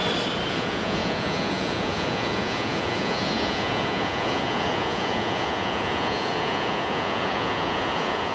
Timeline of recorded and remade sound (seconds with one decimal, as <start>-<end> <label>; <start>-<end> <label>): 0.0-0.5 recorded; 0.5-8.3 remade